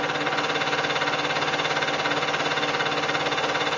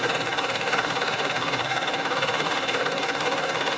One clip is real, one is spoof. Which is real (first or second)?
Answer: first